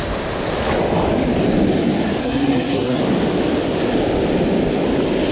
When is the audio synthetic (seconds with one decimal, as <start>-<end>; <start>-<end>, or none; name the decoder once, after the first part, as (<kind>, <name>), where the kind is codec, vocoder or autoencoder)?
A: 2.2-3.0 (codec, SNAC)